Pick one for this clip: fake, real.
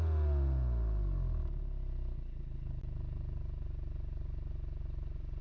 real